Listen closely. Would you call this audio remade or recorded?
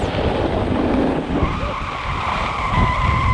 recorded